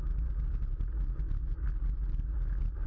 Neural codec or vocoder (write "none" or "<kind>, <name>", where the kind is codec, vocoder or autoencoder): none